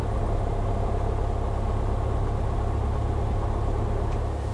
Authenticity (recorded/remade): recorded